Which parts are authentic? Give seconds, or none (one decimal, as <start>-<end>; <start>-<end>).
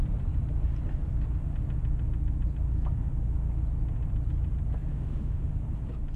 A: 0.0-4.9; 5.5-6.2